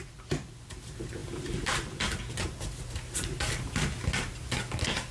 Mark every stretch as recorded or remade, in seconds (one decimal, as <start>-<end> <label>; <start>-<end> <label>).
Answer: 0.0-5.1 recorded